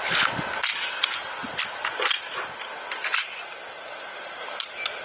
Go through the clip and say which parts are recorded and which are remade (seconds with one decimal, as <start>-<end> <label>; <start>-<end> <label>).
0.0-5.0 recorded